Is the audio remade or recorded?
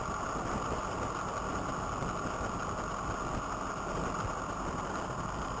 recorded